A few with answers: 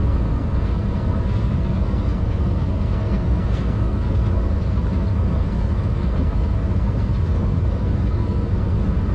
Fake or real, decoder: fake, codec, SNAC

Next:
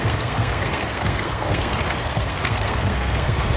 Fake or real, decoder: fake, codec, SNAC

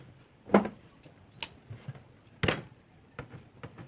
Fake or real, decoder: real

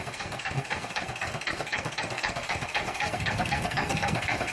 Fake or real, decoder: fake, codec, SNAC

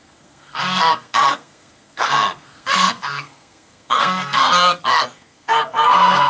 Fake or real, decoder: fake, codec, SNAC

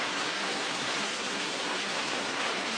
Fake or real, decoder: fake, codec, SNAC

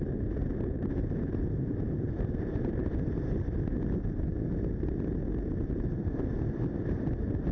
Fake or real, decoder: real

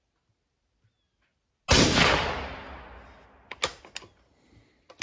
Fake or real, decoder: real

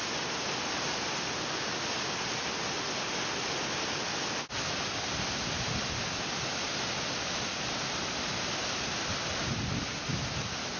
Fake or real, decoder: real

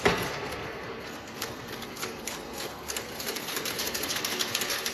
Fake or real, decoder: fake, codec, SNAC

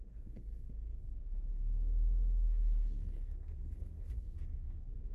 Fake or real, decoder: fake, codec, SNAC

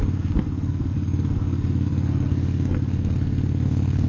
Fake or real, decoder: fake, codec, SNAC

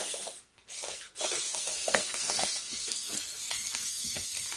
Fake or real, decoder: fake, codec, SNAC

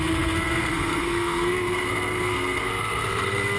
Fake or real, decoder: fake, codec, SNAC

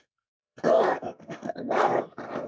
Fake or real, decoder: fake, codec, SNAC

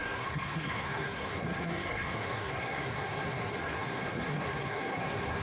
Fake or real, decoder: fake, codec, SNAC